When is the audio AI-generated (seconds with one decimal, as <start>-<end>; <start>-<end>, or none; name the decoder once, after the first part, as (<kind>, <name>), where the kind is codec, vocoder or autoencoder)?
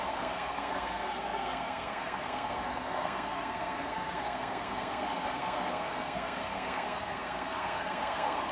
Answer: 0.0-8.5 (codec, SNAC)